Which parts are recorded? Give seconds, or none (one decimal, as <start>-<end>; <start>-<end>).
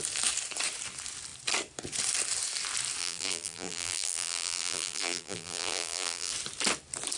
0.0-3.0; 6.3-7.2